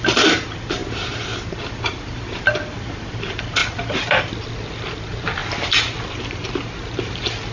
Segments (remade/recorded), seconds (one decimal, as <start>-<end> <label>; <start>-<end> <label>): 0.0-0.8 remade; 0.8-1.6 recorded; 1.6-5.4 remade; 5.4-6.1 recorded; 6.1-7.5 remade